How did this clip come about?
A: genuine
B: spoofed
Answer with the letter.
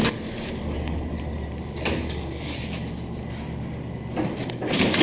A